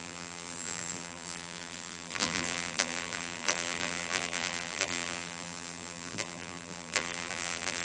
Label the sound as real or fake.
fake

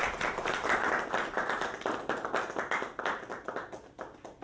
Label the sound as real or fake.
real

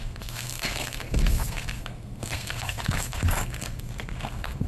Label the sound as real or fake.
fake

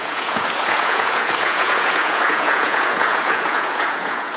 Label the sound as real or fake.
fake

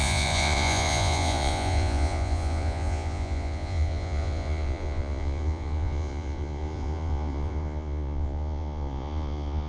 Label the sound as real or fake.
fake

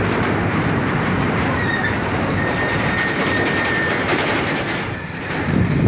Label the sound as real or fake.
fake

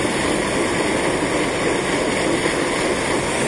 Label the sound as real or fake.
real